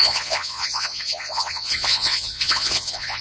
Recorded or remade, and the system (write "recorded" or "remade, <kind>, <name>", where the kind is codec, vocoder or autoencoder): remade, vocoder, Vocos